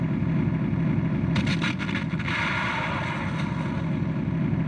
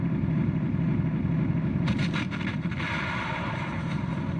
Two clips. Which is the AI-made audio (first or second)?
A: second